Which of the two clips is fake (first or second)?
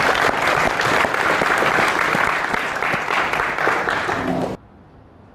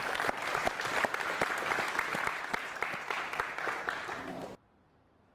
second